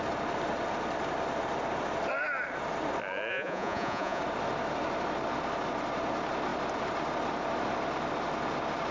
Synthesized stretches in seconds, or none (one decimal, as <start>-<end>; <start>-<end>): 3.3-4.2